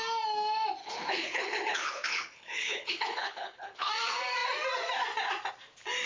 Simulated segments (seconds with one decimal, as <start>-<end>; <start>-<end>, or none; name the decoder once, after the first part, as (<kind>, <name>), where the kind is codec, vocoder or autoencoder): 0.8-3.9 (codec, HILCodec)